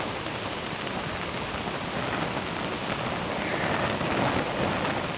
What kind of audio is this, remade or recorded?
recorded